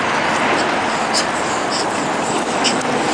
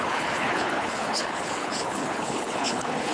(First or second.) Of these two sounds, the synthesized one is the second